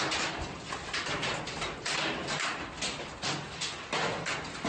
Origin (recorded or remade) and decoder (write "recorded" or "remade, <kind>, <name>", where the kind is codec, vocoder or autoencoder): recorded